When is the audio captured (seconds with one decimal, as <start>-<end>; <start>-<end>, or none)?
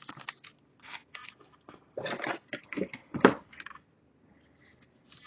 0.0-5.3